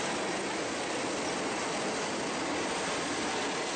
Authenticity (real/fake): real